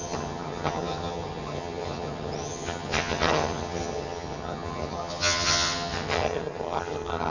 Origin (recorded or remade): remade